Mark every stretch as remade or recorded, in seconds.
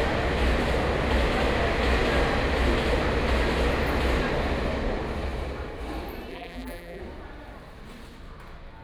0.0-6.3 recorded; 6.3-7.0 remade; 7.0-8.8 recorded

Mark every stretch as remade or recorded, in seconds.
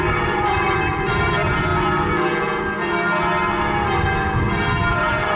0.0-1.7 remade; 1.7-4.9 recorded; 4.9-5.4 remade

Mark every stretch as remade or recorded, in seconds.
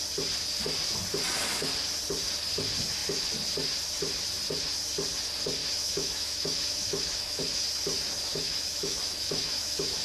0.0-5.6 recorded; 5.6-7.4 remade; 7.4-8.3 recorded; 8.3-10.0 remade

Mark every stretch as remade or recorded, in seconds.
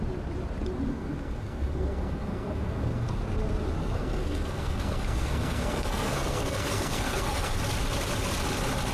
0.0-0.9 recorded; 0.9-3.2 remade; 3.2-3.8 recorded; 3.8-7.6 remade; 7.6-8.9 recorded